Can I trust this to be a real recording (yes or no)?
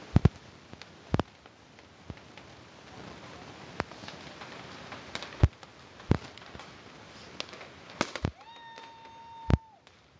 yes